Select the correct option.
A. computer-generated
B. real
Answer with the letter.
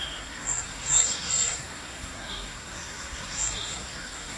A